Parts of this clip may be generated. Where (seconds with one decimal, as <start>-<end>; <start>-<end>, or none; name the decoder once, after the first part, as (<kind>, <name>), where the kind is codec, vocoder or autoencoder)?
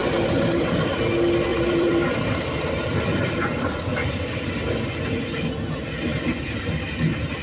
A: 1.5-4.5 (vocoder, BigVGAN v2)